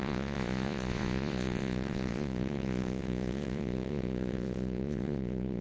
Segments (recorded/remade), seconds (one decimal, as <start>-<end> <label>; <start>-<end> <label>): 0.0-5.6 remade